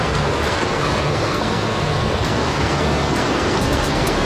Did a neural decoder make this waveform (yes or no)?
yes